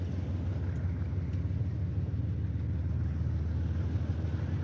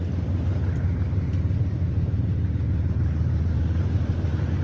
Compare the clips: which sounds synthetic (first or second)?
second